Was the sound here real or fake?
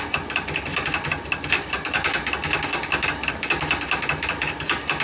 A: real